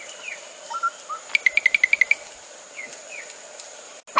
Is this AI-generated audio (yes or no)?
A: no